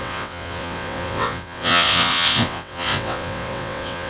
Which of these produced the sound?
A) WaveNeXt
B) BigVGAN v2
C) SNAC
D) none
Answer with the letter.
A